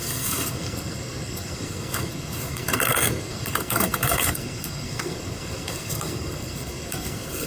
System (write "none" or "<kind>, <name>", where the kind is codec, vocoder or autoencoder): codec, SNAC